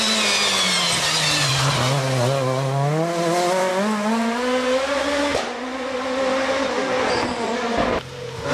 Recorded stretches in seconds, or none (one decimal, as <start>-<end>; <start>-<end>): 0.0-8.5